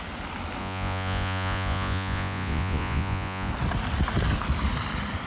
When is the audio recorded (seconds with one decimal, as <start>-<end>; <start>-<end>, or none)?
0.0-0.6; 3.5-5.3